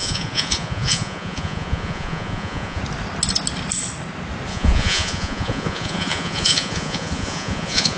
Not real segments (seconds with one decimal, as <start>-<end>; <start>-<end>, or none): 0.0-2.8; 4.5-8.0